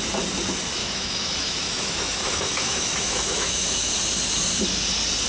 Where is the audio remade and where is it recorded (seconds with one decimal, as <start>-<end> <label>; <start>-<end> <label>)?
0.0-0.8 recorded; 0.8-3.9 remade; 3.9-5.3 recorded